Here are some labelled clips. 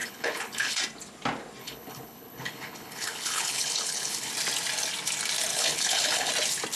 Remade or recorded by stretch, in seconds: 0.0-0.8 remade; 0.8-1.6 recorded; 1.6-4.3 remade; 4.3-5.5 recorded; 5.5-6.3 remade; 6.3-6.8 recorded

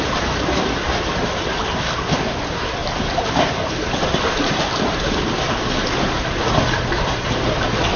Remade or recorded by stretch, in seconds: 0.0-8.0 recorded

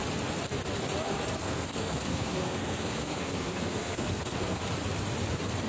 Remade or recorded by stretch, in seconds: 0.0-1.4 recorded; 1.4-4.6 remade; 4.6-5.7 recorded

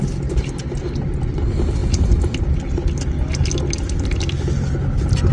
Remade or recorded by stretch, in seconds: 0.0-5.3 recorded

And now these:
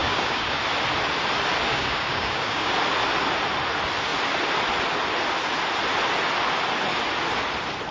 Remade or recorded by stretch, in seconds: 0.0-0.6 remade; 0.6-1.7 recorded; 1.7-2.7 remade; 2.7-7.9 recorded